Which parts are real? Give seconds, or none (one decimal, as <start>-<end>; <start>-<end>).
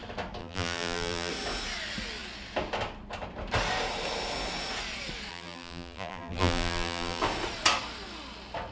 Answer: 0.0-0.4; 1.3-5.3; 7.2-8.7